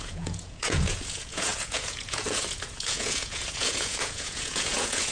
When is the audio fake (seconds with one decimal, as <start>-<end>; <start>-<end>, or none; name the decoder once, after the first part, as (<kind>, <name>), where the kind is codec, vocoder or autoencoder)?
0.0-5.1 (vocoder, Vocos)